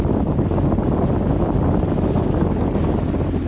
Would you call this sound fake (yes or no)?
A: no